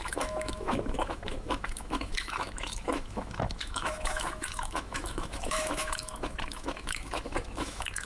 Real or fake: fake